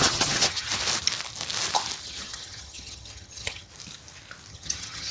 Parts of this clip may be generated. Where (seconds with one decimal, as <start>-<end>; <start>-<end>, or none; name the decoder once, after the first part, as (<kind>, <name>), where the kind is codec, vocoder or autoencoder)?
0.0-0.7 (vocoder, HiFi-GAN); 2.0-3.7; 4.5-5.1